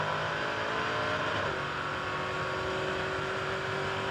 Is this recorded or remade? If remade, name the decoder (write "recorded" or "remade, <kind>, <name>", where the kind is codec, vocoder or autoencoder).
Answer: recorded